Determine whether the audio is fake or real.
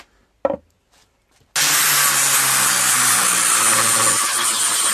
real